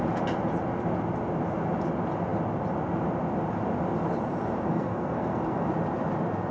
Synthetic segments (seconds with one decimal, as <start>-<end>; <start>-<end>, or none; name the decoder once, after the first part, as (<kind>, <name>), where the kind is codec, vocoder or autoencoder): 4.7-5.7 (codec, SNAC)